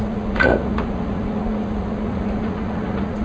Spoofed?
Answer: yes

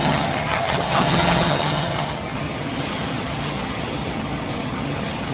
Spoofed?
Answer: yes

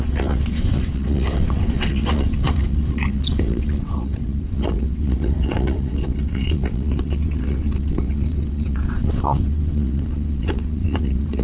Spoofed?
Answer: yes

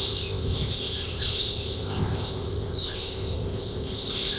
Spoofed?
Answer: yes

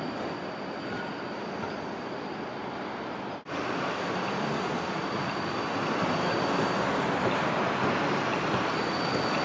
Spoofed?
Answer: no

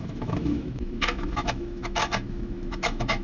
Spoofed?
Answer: yes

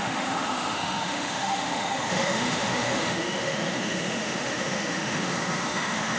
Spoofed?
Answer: yes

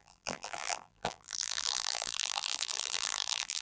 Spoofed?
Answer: yes